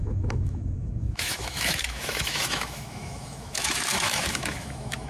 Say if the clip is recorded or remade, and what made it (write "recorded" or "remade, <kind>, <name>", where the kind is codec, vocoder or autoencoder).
remade, autoencoder, DAC-VAE